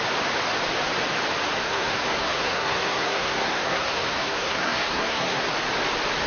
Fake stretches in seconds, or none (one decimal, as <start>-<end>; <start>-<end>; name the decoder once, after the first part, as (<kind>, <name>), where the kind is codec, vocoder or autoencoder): 1.6-5.4 (codec, SNAC)